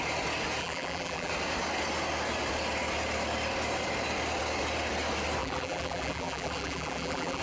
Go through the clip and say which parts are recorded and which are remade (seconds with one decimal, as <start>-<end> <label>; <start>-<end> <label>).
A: 0.0-0.6 recorded; 0.6-1.3 remade; 1.3-5.4 recorded; 5.4-7.4 remade